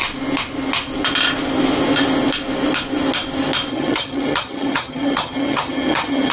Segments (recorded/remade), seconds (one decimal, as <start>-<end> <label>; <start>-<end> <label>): 0.0-3.7 recorded; 3.7-6.3 remade

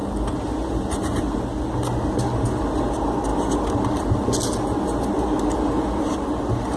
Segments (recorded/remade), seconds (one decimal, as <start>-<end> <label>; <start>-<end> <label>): 0.0-6.8 recorded

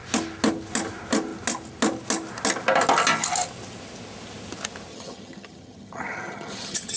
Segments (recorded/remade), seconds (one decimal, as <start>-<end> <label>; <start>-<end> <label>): 0.0-4.9 recorded; 4.9-7.0 remade

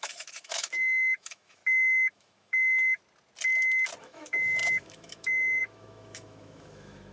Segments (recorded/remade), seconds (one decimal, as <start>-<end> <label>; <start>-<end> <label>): 0.0-1.6 remade; 1.6-2.1 recorded; 2.1-3.0 remade; 3.0-4.0 recorded; 4.0-7.1 remade